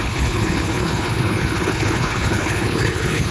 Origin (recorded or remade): remade